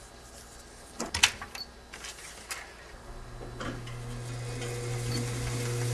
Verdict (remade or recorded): recorded